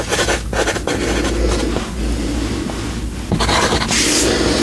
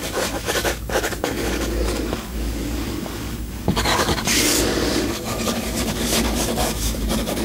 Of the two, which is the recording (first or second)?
first